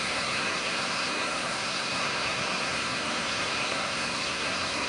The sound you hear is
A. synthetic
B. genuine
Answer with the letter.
A